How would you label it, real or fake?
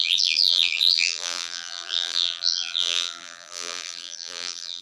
fake